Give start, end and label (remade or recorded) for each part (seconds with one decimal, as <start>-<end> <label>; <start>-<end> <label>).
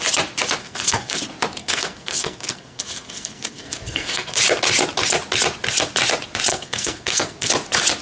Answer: 0.0-0.6 recorded; 0.6-1.2 remade; 1.2-1.6 recorded; 1.6-4.4 remade; 4.4-6.5 recorded; 6.5-7.5 remade; 7.5-8.0 recorded